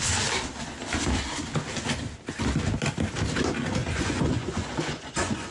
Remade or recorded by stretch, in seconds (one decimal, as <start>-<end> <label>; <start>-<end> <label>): 0.0-3.8 recorded; 3.8-5.5 remade